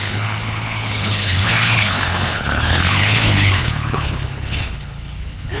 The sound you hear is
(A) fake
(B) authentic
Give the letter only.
A